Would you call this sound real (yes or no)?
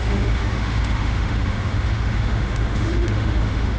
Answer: no